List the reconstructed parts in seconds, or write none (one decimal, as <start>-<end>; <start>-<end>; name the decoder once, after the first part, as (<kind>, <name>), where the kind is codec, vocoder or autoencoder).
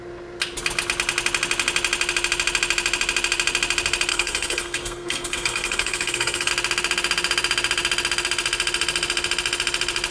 4.1-6.5 (codec, SNAC)